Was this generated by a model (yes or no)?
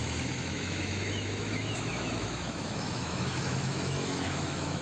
yes